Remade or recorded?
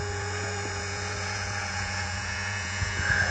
remade